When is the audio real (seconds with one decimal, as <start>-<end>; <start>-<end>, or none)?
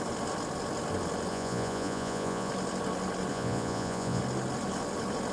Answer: 0.0-1.3; 2.5-3.3; 4.2-5.3